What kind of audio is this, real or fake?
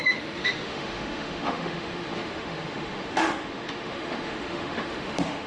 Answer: fake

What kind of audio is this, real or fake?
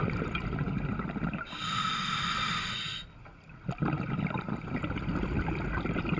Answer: real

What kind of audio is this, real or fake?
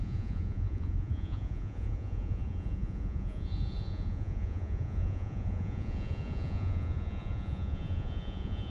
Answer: fake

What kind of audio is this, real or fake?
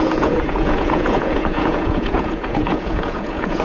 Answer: fake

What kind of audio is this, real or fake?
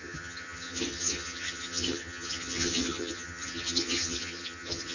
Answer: fake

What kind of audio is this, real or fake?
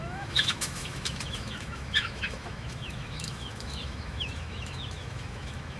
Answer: fake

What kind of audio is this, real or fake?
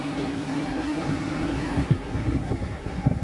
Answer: fake